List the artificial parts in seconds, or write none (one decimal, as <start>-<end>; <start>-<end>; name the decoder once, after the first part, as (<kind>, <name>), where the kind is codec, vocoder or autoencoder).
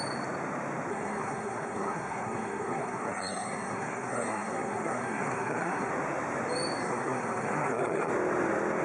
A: 0.9-5.9 (codec, SNAC); 6.8-8.1